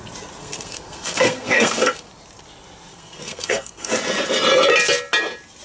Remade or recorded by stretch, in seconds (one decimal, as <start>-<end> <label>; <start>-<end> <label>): 0.0-0.4 recorded; 0.4-2.1 remade; 2.1-2.9 recorded; 2.9-3.9 remade; 3.9-5.6 recorded